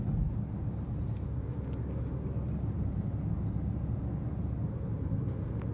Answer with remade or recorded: recorded